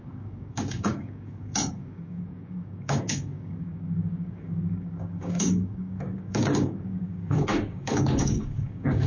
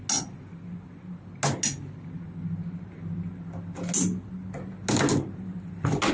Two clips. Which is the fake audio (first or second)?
first